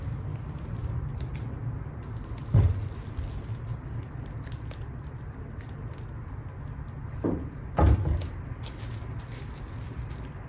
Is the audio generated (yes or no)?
no